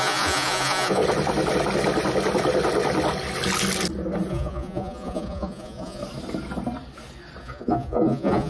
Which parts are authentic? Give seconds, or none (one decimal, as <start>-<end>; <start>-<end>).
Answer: 1.0-4.3; 6.0-7.4